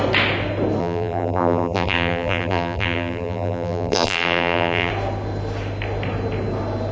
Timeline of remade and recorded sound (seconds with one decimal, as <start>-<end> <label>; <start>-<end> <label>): 0.0-0.8 recorded; 0.8-4.9 remade; 4.9-6.9 recorded